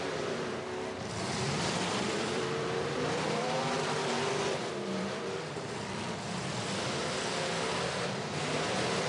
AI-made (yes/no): yes